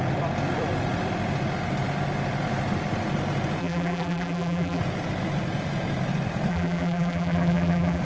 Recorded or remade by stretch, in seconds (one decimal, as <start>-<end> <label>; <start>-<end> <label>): 0.0-3.6 recorded; 3.6-4.8 remade; 4.8-6.5 recorded; 6.5-8.0 remade

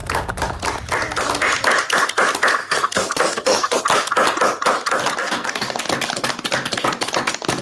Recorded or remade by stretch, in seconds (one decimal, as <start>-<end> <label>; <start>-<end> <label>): 0.0-2.6 recorded; 2.6-3.8 remade; 3.8-5.2 recorded; 5.2-5.8 remade; 5.8-7.6 recorded